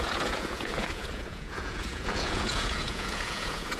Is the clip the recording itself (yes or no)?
no